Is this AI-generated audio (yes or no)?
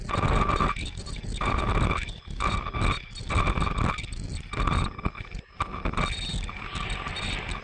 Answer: no